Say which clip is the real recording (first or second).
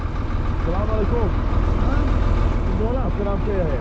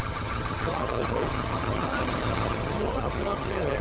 first